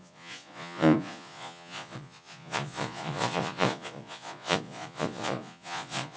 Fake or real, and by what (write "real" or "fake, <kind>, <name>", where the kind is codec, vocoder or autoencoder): fake, vocoder, Vocos